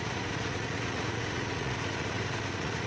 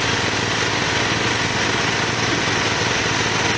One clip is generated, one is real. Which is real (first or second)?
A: second